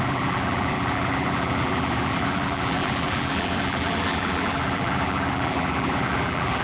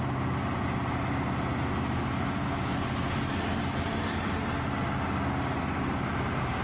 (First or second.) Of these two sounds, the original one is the second